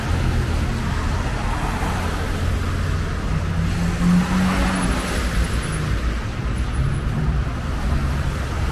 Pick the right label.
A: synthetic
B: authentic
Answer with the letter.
B